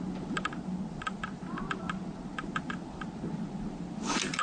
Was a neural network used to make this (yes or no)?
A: no